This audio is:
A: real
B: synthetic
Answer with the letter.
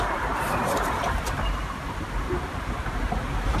B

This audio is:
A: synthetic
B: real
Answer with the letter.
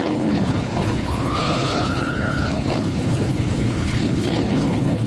A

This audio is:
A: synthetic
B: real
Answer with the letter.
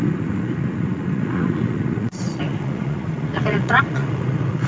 A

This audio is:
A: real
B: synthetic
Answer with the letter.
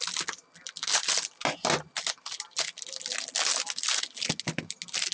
A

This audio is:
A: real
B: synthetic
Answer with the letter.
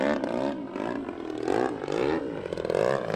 A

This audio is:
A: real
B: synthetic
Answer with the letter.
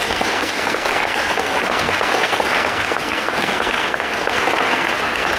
B